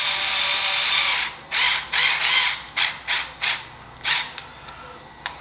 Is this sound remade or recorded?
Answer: recorded